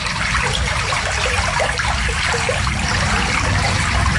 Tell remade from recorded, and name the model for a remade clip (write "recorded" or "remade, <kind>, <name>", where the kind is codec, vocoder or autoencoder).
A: recorded